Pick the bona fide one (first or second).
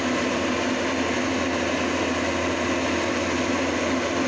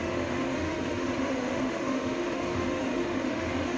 first